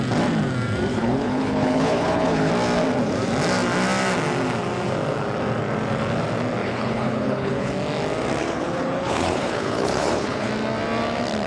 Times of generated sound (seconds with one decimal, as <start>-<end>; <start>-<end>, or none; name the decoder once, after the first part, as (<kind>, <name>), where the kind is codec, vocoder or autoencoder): 0.9-2.5 (codec, HILCodec); 6.6-7.7; 8.4-10.5

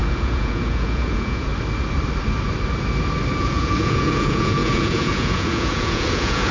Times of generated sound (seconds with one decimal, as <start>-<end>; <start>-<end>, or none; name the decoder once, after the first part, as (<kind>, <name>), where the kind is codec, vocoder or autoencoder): 0.0-1.5 (vocoder, Vocos); 3.4-6.5

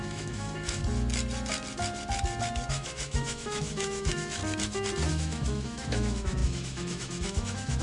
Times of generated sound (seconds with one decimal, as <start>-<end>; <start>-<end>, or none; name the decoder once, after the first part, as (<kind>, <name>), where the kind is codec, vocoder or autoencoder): 0.0-0.8 (autoencoder, DAC-VAE); 2.7-4.4; 5.1-7.8

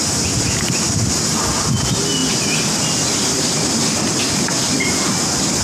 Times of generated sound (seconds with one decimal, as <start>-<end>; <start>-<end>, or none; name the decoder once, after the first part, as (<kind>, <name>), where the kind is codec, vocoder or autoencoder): none

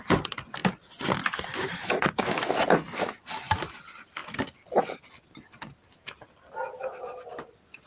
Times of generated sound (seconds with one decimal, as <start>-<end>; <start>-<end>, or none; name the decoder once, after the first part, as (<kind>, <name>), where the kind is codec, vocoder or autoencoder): none

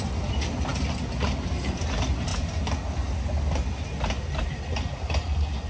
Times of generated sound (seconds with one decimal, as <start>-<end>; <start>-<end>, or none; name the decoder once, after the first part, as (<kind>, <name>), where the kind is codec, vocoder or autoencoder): none

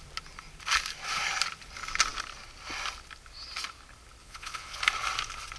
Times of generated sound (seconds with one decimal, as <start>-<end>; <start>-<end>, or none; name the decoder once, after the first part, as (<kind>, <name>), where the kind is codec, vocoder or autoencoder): 4.2-4.8 (vocoder, Vocos)